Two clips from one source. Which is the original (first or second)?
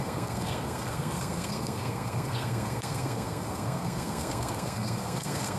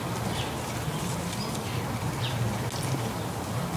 second